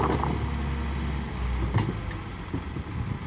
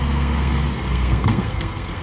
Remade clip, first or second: second